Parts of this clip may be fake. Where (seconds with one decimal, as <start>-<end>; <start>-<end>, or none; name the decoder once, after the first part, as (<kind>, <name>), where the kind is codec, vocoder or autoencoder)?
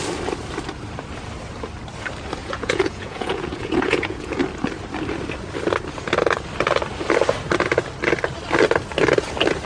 2.4-4.4 (vocoder, Vocos)